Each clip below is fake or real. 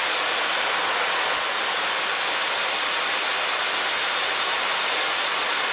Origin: real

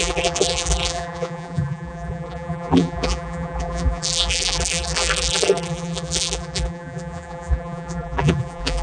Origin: fake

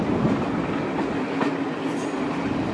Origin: real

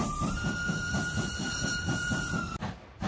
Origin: fake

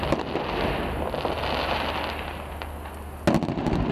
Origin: real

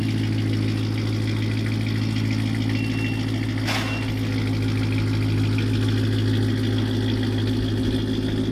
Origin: real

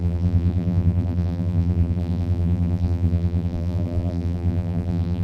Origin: fake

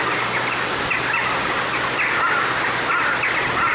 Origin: real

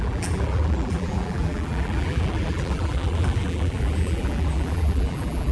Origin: fake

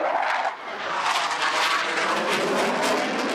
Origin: real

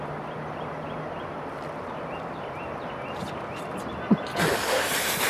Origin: real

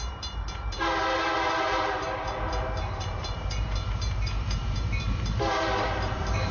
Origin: fake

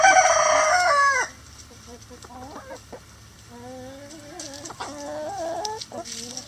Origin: real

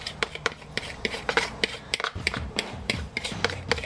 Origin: fake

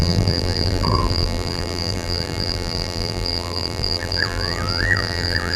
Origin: fake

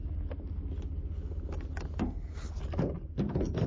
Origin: real